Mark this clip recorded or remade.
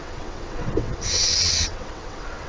remade